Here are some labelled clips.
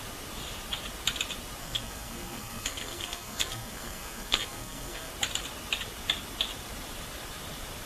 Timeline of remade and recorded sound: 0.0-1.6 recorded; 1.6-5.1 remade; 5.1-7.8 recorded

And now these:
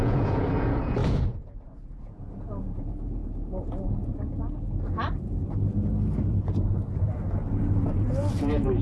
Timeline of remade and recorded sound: 0.0-3.2 remade; 3.2-8.0 recorded; 8.0-8.8 remade

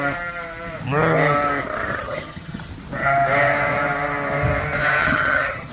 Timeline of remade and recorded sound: 0.0-1.9 recorded; 1.9-2.7 remade; 2.7-5.0 recorded; 5.0-5.7 remade

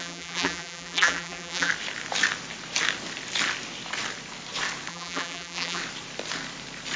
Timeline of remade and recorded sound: 0.0-1.7 remade; 1.7-4.9 recorded; 4.9-5.8 remade; 5.8-7.0 recorded

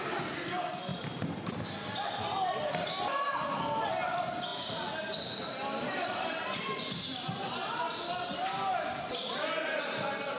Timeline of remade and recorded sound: 0.0-4.5 recorded; 4.5-6.8 remade; 6.8-10.4 recorded